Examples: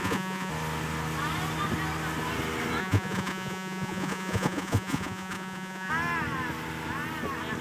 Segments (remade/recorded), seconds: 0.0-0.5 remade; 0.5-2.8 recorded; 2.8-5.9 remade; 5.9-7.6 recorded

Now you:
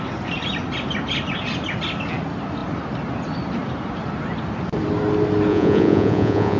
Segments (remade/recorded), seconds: 0.0-5.5 recorded; 5.5-6.6 remade

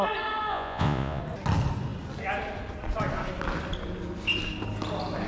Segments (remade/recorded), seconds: 0.0-0.5 recorded; 0.5-1.2 remade; 1.2-5.3 recorded

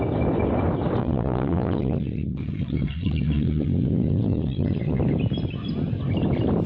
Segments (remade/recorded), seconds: 0.0-1.0 recorded; 1.0-5.0 remade; 5.0-6.7 recorded